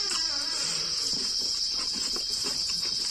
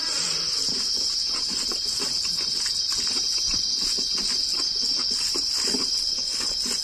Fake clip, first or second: first